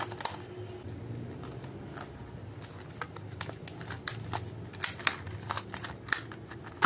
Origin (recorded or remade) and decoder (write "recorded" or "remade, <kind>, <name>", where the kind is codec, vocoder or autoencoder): recorded